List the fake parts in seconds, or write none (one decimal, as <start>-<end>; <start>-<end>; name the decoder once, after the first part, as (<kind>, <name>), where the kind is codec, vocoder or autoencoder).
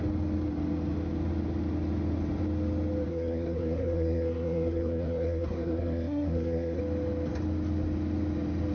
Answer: 3.1-6.8 (codec, SNAC)